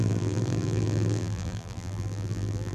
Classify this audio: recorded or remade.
remade